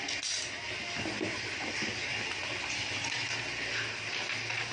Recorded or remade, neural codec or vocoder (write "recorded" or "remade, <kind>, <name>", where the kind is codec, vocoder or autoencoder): recorded